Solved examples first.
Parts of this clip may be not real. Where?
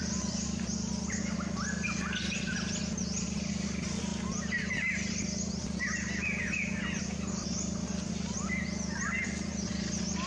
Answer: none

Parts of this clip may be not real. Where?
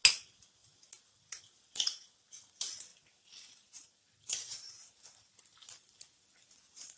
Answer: 0.6-2.5 (vocoder, BigVGAN v2); 2.9-6.5